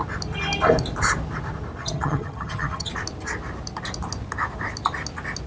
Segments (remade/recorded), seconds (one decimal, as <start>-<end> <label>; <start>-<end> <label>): 0.0-1.8 recorded; 1.8-2.9 remade; 2.9-5.5 recorded